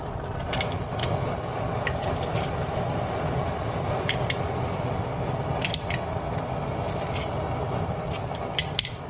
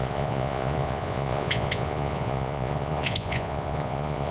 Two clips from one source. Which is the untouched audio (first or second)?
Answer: first